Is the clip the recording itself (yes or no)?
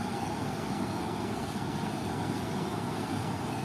no